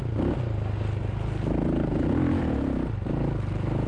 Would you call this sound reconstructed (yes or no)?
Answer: no